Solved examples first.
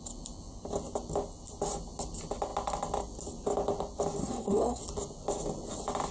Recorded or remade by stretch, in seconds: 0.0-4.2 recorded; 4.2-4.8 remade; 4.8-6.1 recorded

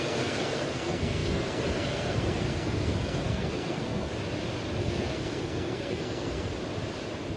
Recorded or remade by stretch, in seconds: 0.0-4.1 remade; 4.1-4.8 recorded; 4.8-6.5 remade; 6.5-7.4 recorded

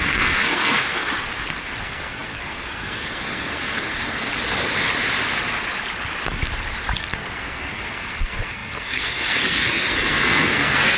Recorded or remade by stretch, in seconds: 0.0-1.1 remade; 1.1-1.8 recorded; 1.8-4.3 remade; 4.3-7.0 recorded; 7.0-11.0 remade

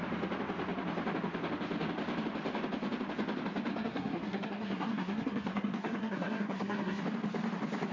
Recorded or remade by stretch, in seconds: 0.0-3.7 recorded; 3.7-7.0 remade; 7.0-7.9 recorded